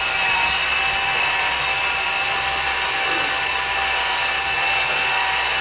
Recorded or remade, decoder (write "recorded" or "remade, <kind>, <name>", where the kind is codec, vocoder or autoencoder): recorded